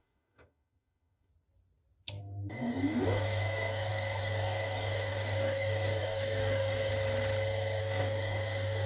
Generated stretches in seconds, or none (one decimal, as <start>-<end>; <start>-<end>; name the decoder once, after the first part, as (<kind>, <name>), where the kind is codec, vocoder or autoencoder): 0.0-1.3 (codec, DAC); 2.2-6.9; 7.8-8.9